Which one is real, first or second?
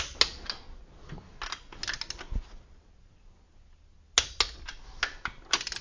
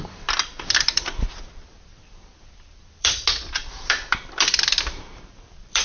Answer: first